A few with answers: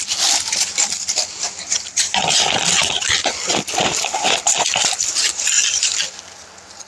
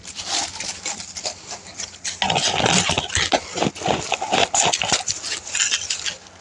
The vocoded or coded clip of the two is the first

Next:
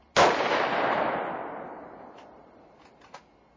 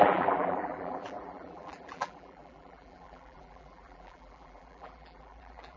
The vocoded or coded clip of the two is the second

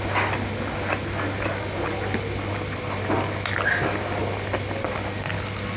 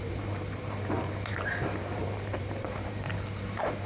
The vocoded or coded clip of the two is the second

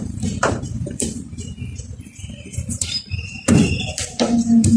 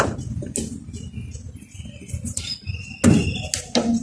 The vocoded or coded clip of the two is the first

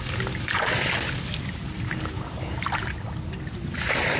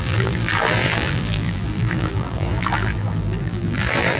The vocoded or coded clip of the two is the second